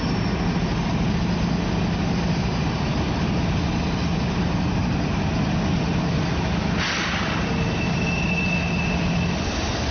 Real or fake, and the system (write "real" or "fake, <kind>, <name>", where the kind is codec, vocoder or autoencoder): real